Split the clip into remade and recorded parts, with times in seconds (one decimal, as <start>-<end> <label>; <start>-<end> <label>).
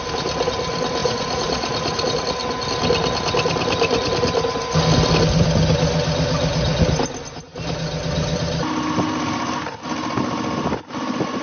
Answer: 0.0-1.0 recorded; 1.0-2.2 remade; 2.2-11.4 recorded